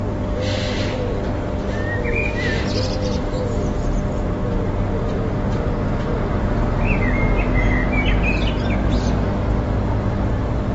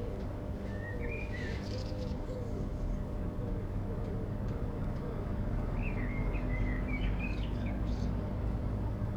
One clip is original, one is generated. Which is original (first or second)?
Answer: first